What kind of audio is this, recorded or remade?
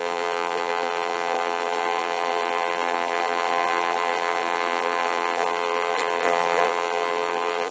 remade